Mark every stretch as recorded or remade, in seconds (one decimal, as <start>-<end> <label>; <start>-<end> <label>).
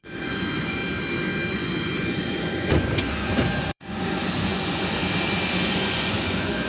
0.0-0.8 remade; 0.8-1.5 recorded; 1.5-5.0 remade; 5.0-5.5 recorded; 5.5-6.7 remade